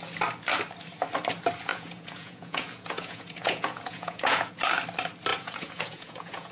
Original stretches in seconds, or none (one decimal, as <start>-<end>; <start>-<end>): 0.0-1.7; 4.5-5.3